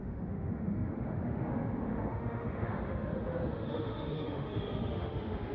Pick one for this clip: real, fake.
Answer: fake